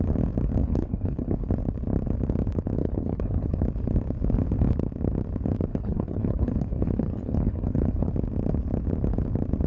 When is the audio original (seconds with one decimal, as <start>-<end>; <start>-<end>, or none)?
0.0-0.6; 1.5-2.8; 3.6-5.7; 8.1-9.7